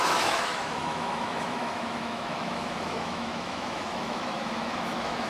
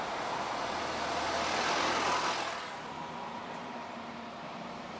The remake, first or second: first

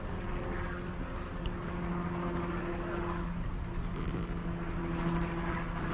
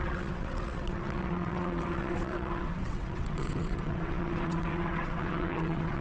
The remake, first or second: second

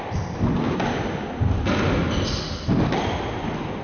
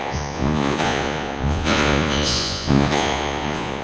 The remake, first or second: second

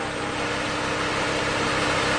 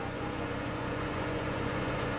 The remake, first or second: second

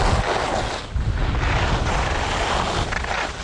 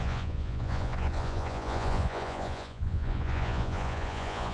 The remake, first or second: second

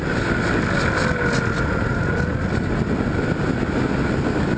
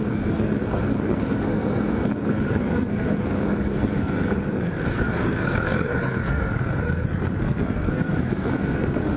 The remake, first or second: second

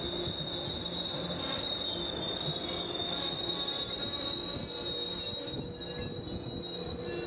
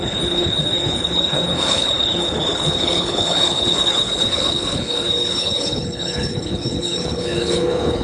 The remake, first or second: second